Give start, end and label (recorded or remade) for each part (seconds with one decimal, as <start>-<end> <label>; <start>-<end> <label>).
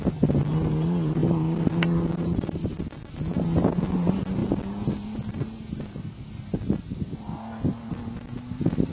0.0-8.9 recorded